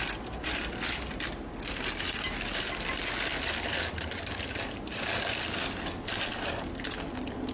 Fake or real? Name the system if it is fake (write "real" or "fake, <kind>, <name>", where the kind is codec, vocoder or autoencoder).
real